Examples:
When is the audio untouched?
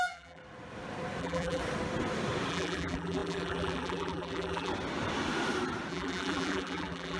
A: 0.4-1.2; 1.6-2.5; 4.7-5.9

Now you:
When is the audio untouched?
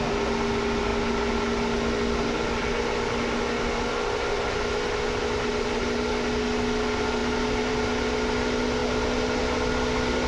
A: 0.0-10.3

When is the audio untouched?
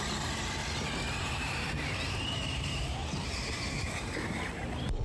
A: 0.6-1.2